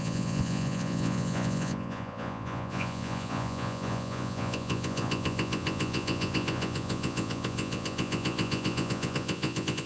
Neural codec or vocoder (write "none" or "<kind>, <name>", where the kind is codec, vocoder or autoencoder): vocoder, Vocos